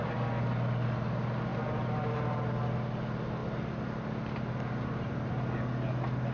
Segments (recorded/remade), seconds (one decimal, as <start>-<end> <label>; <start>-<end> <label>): 0.0-1.5 recorded; 1.5-2.2 remade; 2.2-6.3 recorded